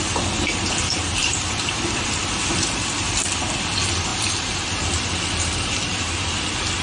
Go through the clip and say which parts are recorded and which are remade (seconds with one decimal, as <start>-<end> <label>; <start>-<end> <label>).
0.0-1.2 recorded; 1.2-3.3 remade; 3.3-4.1 recorded; 4.1-5.0 remade; 5.0-6.8 recorded